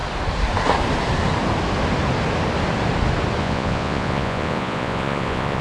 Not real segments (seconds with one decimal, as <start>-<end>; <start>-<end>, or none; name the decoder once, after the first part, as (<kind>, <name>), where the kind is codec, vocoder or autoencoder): 3.4-5.6 (vocoder, Vocos)